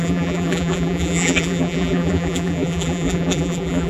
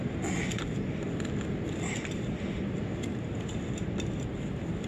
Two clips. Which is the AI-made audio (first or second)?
first